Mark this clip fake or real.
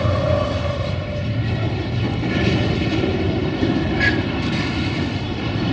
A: real